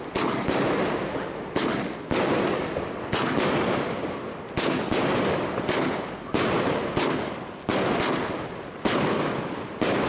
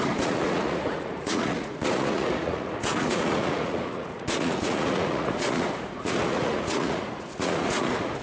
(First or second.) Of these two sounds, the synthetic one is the second